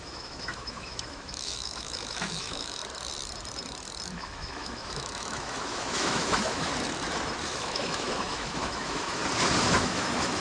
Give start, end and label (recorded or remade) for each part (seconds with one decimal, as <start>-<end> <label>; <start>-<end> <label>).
0.0-2.8 remade; 2.8-4.1 recorded; 4.1-6.7 remade; 6.7-7.4 recorded; 7.4-9.2 remade; 9.2-9.7 recorded; 9.7-10.4 remade